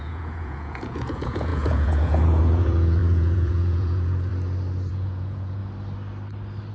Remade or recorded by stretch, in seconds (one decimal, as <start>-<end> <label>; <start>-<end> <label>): 0.0-4.3 remade; 4.3-4.9 recorded; 4.9-5.6 remade; 5.6-6.7 recorded